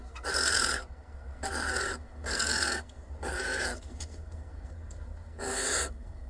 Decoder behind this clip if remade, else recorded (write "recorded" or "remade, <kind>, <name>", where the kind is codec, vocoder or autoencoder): remade, codec, SNAC